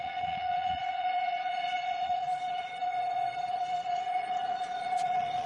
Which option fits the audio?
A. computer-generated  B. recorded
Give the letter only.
A